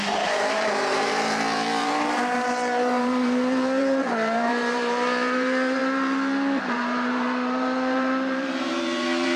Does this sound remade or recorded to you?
remade